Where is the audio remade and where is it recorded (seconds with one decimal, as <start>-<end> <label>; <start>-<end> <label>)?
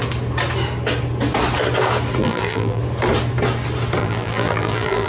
0.0-2.2 recorded; 2.2-2.8 remade; 2.8-4.0 recorded; 4.0-5.1 remade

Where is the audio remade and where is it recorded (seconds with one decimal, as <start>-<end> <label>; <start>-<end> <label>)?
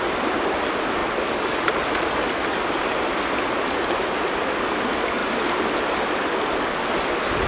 0.0-7.5 recorded